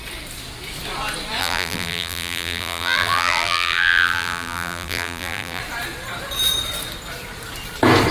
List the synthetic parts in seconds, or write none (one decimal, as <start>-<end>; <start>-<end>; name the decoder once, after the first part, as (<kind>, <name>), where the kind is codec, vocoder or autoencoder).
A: 1.4-5.6 (vocoder, BigVGAN v2)